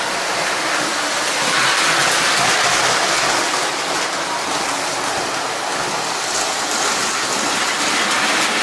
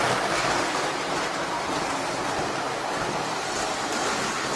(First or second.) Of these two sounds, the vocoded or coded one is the second